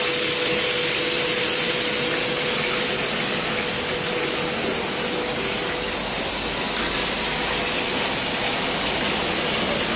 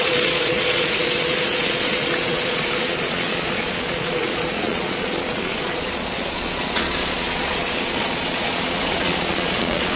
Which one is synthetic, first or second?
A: second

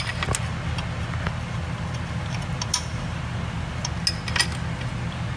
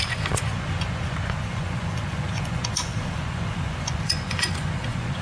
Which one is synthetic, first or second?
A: second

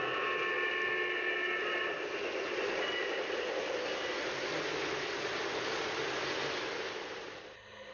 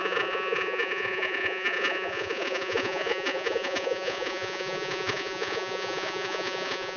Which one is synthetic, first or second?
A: second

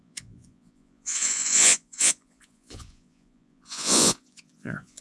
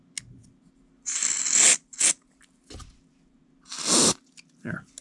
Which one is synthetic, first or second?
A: first